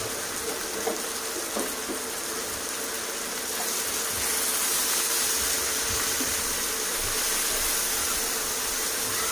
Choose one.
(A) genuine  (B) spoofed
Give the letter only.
A